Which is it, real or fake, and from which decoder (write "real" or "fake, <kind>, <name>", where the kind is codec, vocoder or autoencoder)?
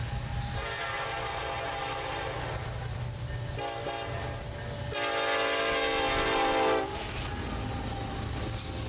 real